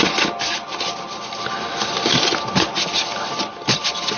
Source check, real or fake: real